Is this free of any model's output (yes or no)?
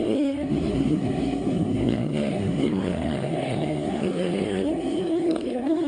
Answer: no